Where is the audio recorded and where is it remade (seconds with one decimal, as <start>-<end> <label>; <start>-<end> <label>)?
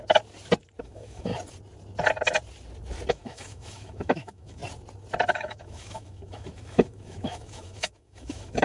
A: 0.0-0.8 recorded; 0.8-1.3 remade; 1.3-3.1 recorded; 3.1-4.6 remade; 4.6-5.3 recorded; 5.3-8.6 remade